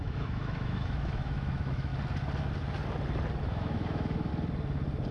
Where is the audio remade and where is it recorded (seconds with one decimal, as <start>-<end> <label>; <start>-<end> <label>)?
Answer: 0.0-1.9 remade; 1.9-3.4 recorded; 3.4-4.3 remade; 4.3-5.1 recorded